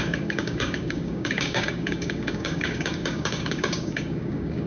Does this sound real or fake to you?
fake